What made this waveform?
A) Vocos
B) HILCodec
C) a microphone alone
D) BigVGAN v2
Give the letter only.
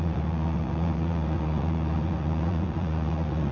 A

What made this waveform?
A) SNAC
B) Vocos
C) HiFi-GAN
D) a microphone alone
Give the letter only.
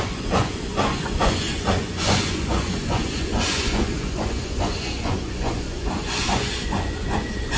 B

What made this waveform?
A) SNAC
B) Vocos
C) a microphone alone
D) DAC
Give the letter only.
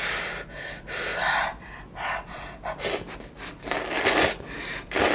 C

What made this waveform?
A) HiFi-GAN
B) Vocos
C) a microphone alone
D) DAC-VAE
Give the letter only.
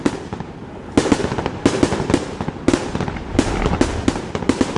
C